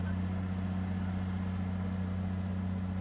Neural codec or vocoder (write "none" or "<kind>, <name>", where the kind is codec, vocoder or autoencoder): none